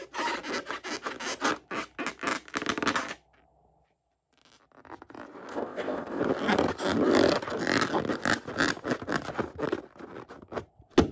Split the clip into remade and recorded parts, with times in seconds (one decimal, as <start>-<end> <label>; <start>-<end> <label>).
0.0-5.5 recorded; 5.5-6.2 remade; 6.2-11.1 recorded